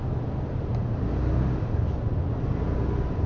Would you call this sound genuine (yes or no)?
yes